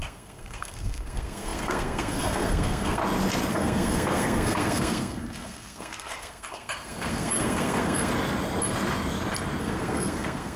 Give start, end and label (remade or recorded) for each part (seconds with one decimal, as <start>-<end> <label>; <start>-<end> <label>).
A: 0.0-3.0 remade; 3.0-3.5 recorded; 3.5-8.1 remade; 8.1-9.6 recorded; 9.6-10.6 remade